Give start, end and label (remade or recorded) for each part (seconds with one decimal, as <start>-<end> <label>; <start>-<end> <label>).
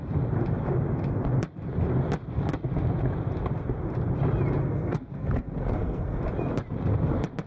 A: 0.0-4.6 recorded; 4.6-6.2 remade; 6.2-7.5 recorded